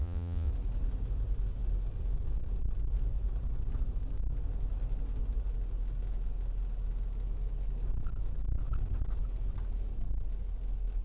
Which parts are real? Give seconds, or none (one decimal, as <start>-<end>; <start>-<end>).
0.5-11.0